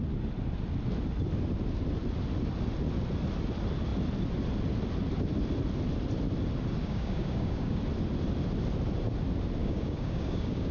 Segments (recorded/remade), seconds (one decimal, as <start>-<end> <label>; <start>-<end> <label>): 0.0-6.8 recorded; 6.8-7.8 remade; 7.8-9.6 recorded; 9.6-10.7 remade